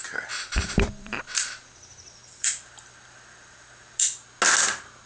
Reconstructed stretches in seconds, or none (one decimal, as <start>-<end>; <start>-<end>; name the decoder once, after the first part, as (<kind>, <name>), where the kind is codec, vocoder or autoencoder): 0.0-1.2 (vocoder, BigVGAN v2); 2.2-3.7